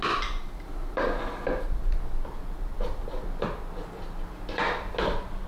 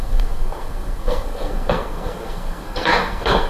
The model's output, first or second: second